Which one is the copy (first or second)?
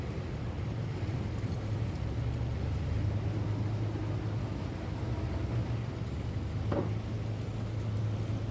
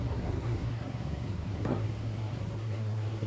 second